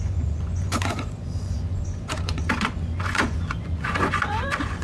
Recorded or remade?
remade